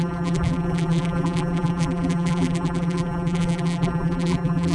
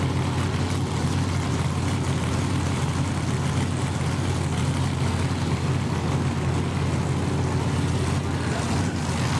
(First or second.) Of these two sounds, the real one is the second